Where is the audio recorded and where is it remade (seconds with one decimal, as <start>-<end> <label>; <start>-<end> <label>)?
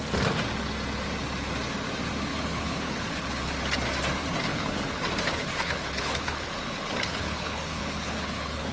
0.0-2.3 recorded; 2.3-3.5 remade; 3.5-4.5 recorded; 4.5-5.0 remade; 5.0-5.4 recorded; 5.4-8.7 remade